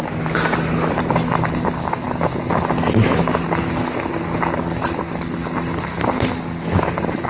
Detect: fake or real real